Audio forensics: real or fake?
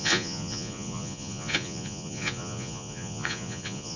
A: fake